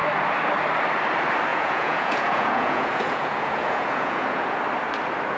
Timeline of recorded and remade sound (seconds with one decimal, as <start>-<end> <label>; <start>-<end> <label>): 0.0-1.5 recorded; 1.5-4.6 remade; 4.6-5.4 recorded